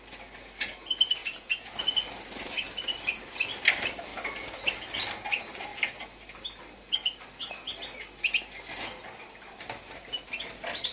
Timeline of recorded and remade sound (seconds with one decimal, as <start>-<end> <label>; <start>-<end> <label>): 0.0-1.2 recorded; 1.2-1.7 remade; 1.7-10.9 recorded